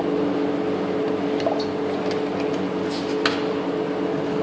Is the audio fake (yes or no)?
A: no